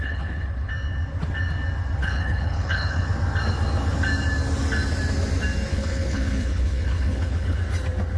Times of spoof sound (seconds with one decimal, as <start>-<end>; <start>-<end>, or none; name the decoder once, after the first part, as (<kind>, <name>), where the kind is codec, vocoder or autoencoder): 0.0-0.7 (codec, HILCodec); 2.0-3.1; 5.7-7.6